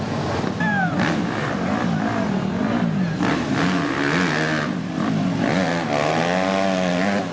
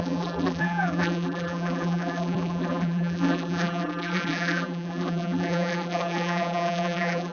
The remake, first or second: second